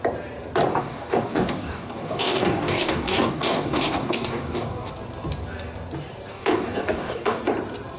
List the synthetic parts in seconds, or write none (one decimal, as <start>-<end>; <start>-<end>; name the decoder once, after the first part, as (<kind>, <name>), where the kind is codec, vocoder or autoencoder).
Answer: 0.7-4.9 (codec, DAC); 6.3-7.4

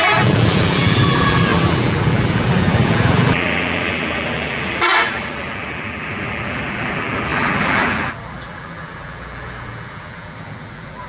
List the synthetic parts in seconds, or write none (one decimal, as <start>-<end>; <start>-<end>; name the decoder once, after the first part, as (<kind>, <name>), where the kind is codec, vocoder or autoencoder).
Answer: 0.0-11.1 (vocoder, BigVGAN v2)

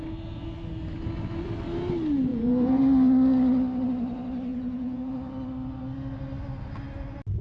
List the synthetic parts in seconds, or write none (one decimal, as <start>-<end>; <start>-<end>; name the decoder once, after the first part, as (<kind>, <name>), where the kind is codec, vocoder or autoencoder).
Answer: 2.3-2.8 (vocoder, Vocos); 4.5-5.1

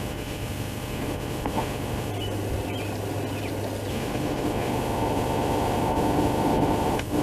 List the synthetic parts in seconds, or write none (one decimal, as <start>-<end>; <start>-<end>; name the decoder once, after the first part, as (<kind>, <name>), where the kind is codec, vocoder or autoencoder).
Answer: 0.0-2.1 (autoencoder, DAC-VAE); 3.9-7.2

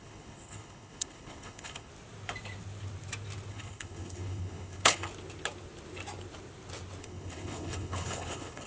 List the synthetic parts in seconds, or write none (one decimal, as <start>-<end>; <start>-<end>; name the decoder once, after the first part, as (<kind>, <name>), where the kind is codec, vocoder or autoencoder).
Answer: 0.0-1.9 (codec, HILCodec); 3.5-5.1; 7.0-8.7

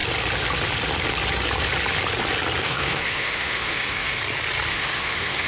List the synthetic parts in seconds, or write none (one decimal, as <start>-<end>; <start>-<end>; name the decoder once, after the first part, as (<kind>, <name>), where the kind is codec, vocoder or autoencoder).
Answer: 2.6-4.2 (autoencoder, DAC-VAE); 4.7-5.5